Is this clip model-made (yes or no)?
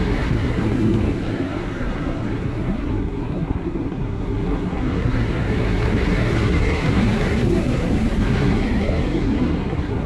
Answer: yes